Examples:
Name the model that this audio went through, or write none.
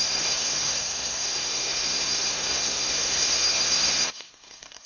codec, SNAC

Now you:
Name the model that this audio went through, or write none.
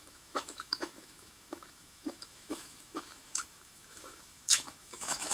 autoencoder, DAC-VAE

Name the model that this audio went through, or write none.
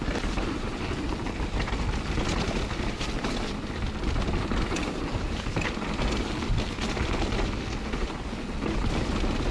none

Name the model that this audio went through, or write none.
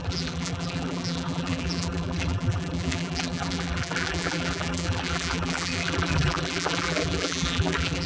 vocoder, BigVGAN v2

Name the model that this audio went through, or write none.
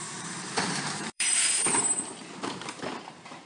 vocoder, BigVGAN v2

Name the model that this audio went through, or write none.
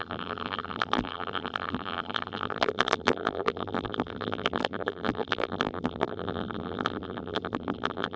vocoder, BigVGAN v2